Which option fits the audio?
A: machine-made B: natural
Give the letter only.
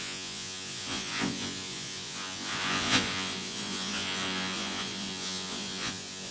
A